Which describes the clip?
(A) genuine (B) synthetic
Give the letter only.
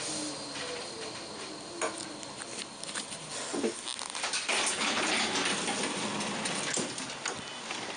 A